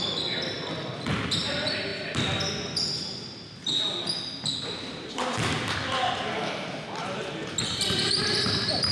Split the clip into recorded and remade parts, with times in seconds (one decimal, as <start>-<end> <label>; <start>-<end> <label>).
0.0-8.9 recorded